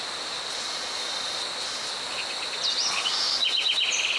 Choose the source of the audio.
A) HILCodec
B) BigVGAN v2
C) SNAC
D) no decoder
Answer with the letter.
D